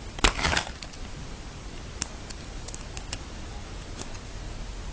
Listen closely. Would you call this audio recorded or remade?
recorded